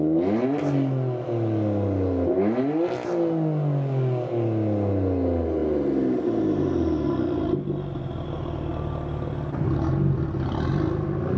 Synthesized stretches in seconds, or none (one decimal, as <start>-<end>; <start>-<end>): none